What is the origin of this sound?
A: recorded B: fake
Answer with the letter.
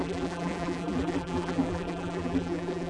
B